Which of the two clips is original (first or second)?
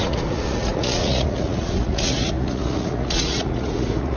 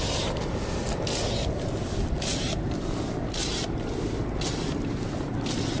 second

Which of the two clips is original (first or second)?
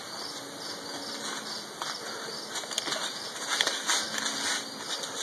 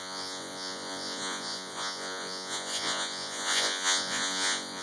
first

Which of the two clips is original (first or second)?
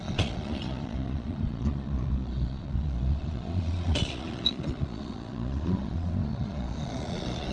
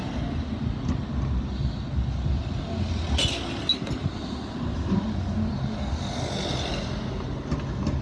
second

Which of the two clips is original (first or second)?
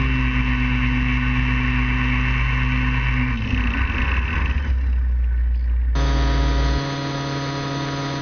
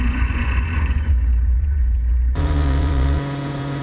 first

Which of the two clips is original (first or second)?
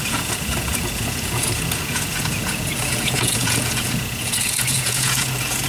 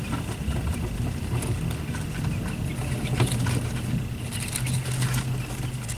second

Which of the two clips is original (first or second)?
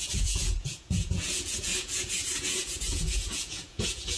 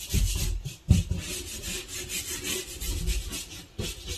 second